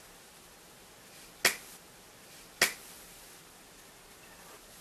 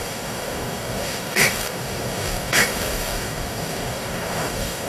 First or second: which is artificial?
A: second